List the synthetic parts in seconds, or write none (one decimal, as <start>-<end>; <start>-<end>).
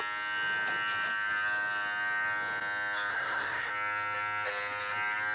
3.1-3.7